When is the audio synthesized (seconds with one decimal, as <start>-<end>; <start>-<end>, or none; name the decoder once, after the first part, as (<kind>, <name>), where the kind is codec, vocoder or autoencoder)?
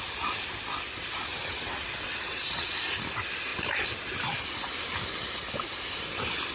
1.3-2.8 (vocoder, WaveNeXt)